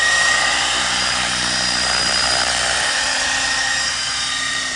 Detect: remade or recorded remade